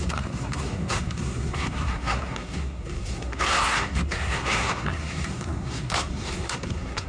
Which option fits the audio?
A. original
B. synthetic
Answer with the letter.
B